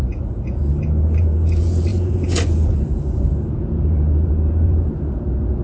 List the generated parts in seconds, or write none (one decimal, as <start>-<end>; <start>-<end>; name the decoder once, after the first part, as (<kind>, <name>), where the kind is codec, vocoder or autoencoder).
0.0-0.6 (vocoder, Vocos); 1.2-5.6